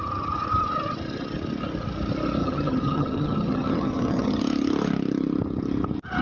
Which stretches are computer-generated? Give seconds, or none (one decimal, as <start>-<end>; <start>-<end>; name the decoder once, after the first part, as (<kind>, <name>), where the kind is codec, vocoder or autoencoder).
2.4-4.4 (vocoder, HiFi-GAN)